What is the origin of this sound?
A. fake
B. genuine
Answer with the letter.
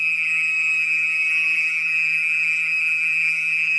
A